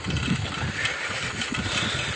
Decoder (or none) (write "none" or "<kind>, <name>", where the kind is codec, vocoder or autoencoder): none